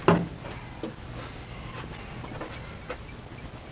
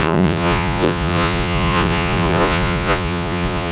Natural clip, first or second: first